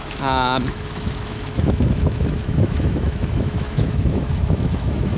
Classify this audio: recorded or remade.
remade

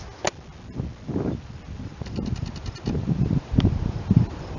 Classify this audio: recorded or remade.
recorded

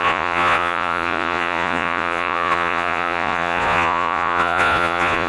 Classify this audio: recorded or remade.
remade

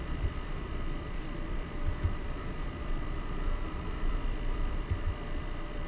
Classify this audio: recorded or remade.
remade